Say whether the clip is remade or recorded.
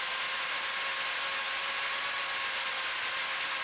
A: recorded